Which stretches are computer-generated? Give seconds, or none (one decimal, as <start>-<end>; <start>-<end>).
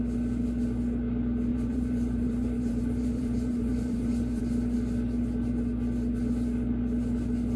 1.5-4.4